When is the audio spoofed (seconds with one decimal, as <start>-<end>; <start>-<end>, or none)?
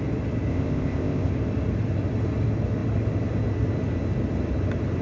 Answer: 0.5-1.3